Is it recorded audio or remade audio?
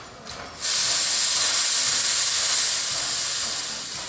recorded